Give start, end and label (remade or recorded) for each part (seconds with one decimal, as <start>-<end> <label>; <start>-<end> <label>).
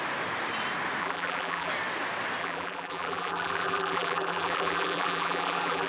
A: 0.0-1.0 recorded; 1.0-1.7 remade; 1.7-2.4 recorded; 2.4-5.9 remade